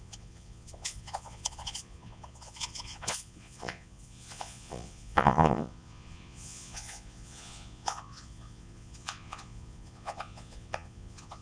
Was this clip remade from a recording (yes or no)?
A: yes